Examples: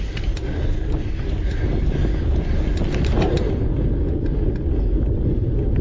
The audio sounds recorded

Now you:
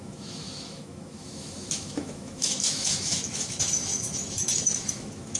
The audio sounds remade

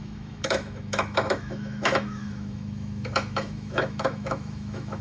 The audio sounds remade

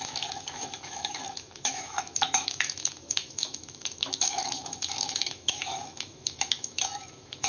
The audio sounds remade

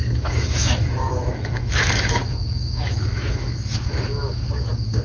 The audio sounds remade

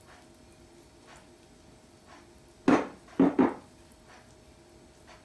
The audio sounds recorded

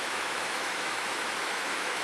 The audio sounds remade